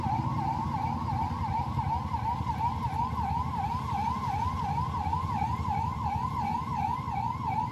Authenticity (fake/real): real